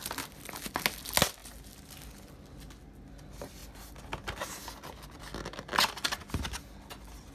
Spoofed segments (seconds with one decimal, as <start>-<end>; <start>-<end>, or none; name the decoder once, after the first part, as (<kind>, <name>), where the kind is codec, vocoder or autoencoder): none